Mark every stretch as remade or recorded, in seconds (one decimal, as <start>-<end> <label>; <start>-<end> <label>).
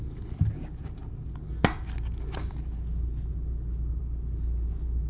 0.0-5.1 recorded